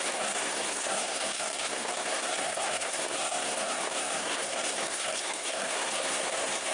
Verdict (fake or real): fake